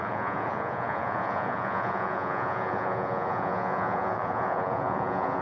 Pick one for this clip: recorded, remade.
remade